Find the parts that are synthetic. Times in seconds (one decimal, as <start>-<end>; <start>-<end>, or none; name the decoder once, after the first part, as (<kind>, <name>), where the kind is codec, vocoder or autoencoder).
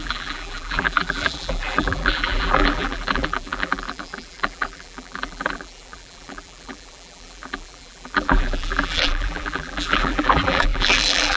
0.0-11.4 (vocoder, BigVGAN v2)